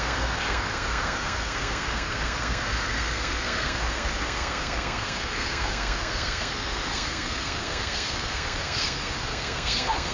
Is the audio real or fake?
fake